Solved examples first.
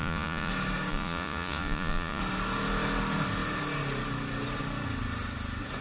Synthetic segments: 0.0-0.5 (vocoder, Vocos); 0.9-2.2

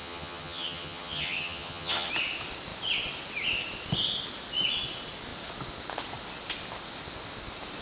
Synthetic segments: 0.0-2.1 (vocoder, HiFi-GAN)

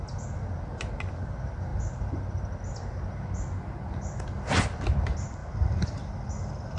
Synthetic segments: none

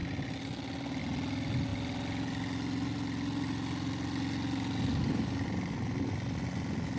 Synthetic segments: none

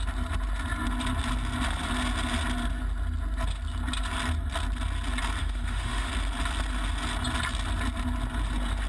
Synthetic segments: 5.4-6.1 (autoencoder, DAC-VAE)

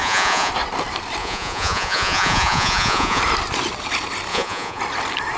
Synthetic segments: 0.0-0.5 (vocoder, Vocos); 1.2-3.2; 4.3-4.8